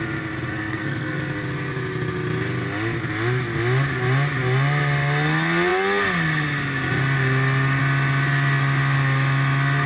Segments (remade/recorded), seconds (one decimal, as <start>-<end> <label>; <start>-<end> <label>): 0.0-0.5 recorded; 0.5-1.2 remade; 1.2-9.9 recorded